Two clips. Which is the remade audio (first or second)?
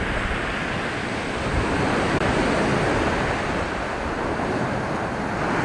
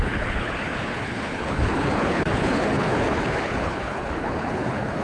second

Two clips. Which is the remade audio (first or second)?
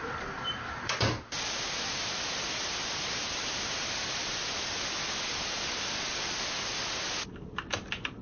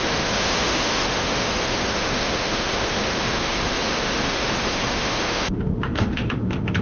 second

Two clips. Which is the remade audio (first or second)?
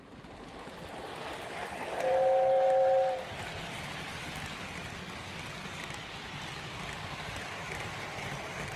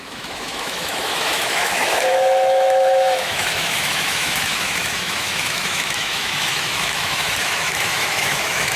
second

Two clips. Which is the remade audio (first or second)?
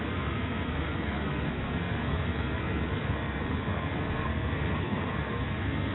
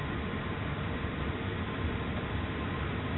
first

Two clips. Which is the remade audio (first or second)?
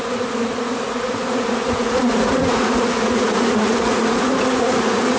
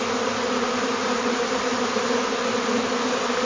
first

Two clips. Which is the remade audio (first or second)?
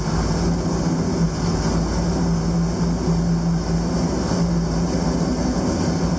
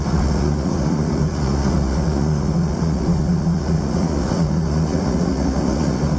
second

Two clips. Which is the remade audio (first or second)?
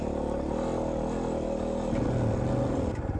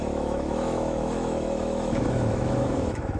second